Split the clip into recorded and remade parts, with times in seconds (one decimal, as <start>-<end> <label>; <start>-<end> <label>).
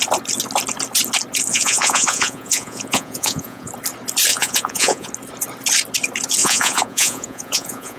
0.0-1.5 recorded; 1.5-3.7 remade; 3.7-4.3 recorded; 4.3-5.1 remade; 5.1-6.4 recorded; 6.4-8.0 remade